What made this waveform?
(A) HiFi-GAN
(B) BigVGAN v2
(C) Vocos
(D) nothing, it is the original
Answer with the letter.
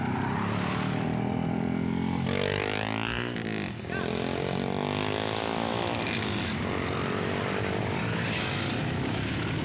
D